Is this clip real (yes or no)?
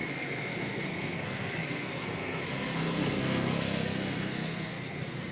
no